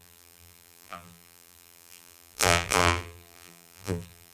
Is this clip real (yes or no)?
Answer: no